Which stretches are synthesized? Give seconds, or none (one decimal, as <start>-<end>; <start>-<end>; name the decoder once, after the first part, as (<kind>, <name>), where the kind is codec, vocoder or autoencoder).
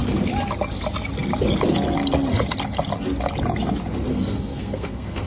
4.1-5.3 (codec, SNAC)